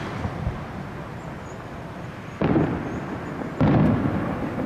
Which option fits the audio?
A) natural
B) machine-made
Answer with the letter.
A